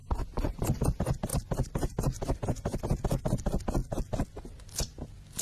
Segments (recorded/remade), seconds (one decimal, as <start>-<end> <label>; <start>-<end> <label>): 0.0-0.8 remade; 0.8-1.3 recorded; 1.3-2.8 remade; 2.8-5.4 recorded